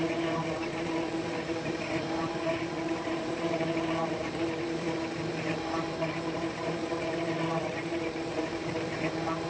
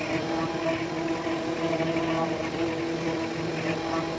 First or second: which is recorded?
second